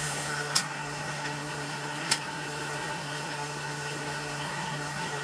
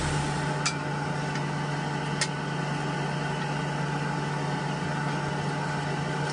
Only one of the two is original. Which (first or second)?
second